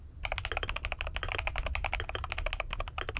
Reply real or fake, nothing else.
real